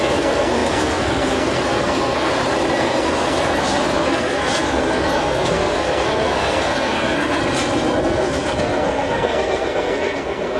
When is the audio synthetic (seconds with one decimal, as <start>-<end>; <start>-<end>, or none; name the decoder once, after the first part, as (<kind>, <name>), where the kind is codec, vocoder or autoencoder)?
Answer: 0.0-2.3 (codec, SNAC); 2.8-7.4; 8.0-10.6